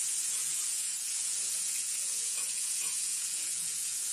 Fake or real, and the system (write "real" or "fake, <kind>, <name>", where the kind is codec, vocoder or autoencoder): fake, vocoder, Vocos